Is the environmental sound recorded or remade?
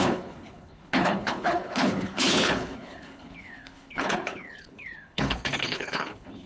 remade